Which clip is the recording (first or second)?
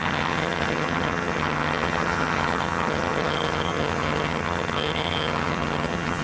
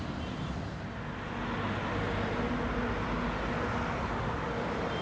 second